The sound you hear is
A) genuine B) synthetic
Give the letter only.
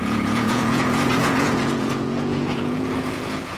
B